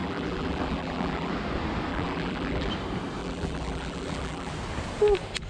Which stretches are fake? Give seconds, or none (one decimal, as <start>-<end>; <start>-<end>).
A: 0.0-1.3; 1.9-2.7; 3.2-4.5